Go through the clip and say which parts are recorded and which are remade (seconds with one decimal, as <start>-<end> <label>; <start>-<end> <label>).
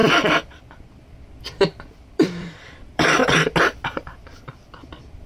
0.0-0.9 recorded; 0.9-3.2 remade; 3.2-4.5 recorded; 4.5-5.3 remade